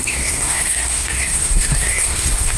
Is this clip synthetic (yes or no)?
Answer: yes